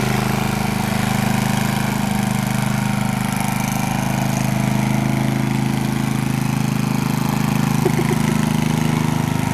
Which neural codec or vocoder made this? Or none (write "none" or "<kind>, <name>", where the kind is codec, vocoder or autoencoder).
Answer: none